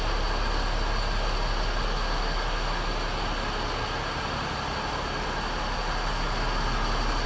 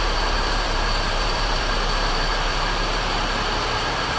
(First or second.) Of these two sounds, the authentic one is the first